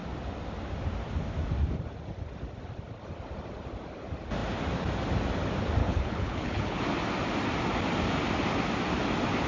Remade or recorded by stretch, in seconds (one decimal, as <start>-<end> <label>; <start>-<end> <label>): 0.0-5.8 recorded; 5.8-6.8 remade; 6.8-9.5 recorded